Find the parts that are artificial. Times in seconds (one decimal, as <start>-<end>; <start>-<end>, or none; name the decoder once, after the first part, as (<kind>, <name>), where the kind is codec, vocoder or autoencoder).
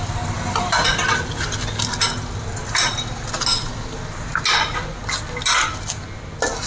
none